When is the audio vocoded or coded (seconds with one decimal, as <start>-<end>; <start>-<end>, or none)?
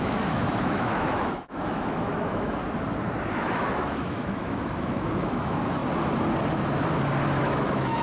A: 0.0-2.6; 3.3-5.8; 7.4-8.0